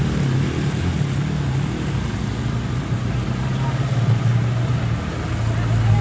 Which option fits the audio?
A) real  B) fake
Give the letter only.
A